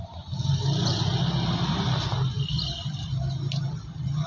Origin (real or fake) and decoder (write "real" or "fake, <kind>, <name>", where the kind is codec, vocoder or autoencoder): real